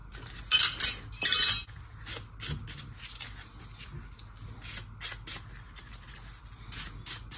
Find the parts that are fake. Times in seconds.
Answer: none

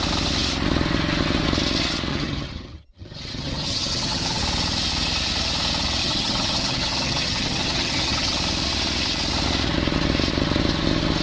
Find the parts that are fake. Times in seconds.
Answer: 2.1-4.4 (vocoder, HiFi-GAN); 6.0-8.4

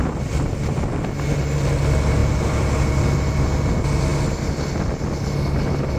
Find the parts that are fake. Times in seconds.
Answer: none

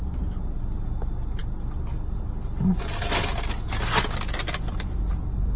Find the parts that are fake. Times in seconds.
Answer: none

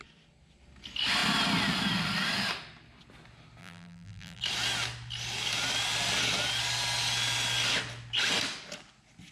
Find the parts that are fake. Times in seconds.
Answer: 3.6-4.4 (vocoder, BigVGAN v2)

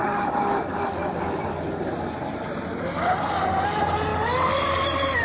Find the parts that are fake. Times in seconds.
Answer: none

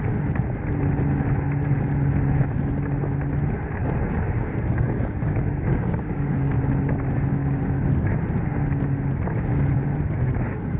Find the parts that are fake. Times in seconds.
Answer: 3.8-6.6 (codec, DAC)